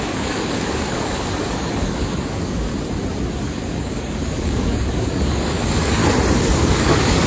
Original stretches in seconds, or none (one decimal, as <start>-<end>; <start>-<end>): 2.7-3.4; 6.0-6.5